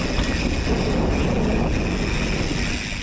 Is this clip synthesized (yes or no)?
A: no